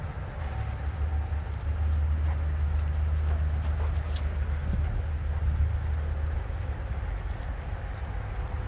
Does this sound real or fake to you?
real